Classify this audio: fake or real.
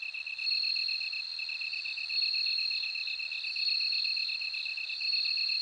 real